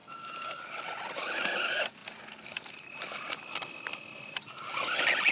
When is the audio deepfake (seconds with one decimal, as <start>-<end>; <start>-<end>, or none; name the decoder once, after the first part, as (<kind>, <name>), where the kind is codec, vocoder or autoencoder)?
0.0-0.6 (codec, DAC)